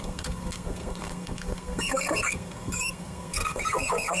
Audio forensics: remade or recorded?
remade